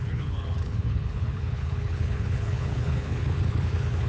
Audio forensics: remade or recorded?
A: remade